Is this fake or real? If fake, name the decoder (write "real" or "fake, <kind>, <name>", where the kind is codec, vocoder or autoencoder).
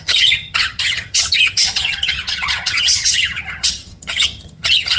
fake, vocoder, HiFi-GAN